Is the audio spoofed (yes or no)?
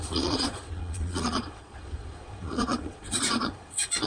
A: yes